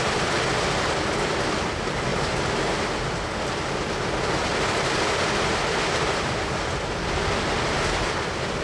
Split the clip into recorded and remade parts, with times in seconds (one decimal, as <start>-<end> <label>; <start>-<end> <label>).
0.0-2.1 recorded; 2.1-2.8 remade; 2.8-8.6 recorded